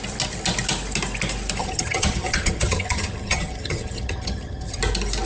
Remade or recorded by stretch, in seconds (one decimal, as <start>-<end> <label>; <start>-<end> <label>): 0.0-1.6 recorded; 1.6-4.8 remade; 4.8-5.3 recorded